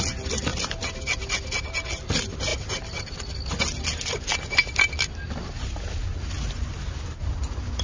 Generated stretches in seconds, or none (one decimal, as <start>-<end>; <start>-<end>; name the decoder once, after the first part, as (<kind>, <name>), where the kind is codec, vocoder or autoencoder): none